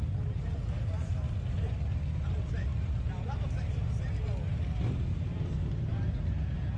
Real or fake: real